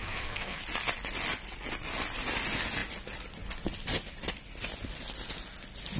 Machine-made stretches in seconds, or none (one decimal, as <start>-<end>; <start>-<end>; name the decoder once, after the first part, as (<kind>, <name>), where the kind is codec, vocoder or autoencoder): 0.0-0.6 (codec, SNAC)